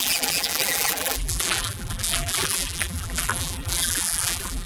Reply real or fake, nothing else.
fake